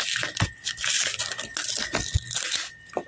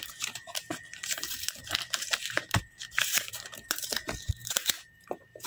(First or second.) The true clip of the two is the first